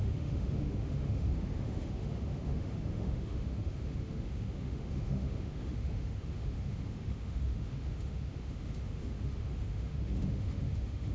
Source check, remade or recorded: remade